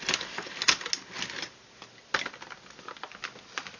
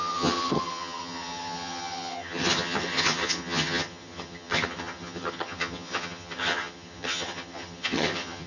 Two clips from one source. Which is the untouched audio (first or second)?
first